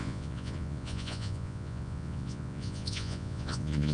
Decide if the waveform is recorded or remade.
remade